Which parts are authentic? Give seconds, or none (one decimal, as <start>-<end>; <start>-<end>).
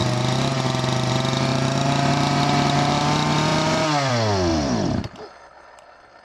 1.1-1.5; 3.0-4.5; 5.0-6.2